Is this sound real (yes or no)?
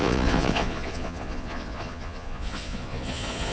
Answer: no